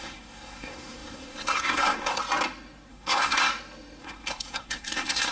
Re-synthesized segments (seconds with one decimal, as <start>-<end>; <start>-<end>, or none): 0.0-2.2; 2.9-3.5; 4.0-5.3